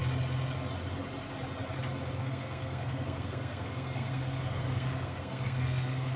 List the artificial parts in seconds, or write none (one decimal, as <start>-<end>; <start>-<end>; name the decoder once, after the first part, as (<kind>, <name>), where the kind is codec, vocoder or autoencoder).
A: 2.2-6.2 (codec, SNAC)